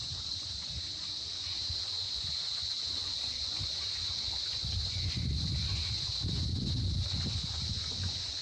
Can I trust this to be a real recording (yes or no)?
no